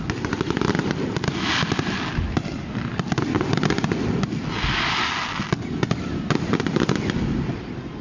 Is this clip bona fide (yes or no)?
yes